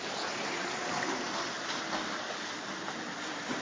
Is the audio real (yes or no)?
yes